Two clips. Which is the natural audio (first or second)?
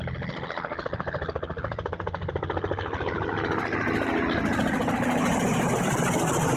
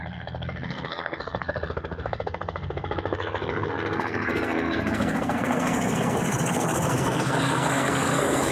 first